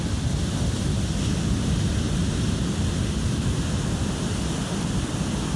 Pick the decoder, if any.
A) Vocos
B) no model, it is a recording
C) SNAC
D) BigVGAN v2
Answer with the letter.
B